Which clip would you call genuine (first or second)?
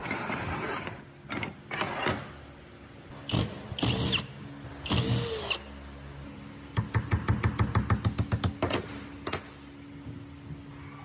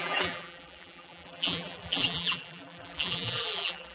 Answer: first